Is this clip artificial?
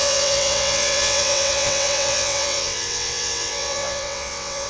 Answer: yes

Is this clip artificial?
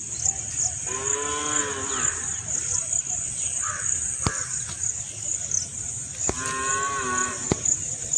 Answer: no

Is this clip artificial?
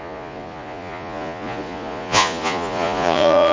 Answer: yes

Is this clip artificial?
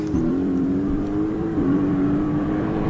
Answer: yes